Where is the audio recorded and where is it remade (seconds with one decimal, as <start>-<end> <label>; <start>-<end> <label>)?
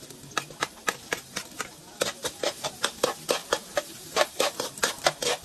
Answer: 0.0-0.6 recorded; 0.6-2.7 remade; 2.7-3.4 recorded; 3.4-4.6 remade; 4.6-5.4 recorded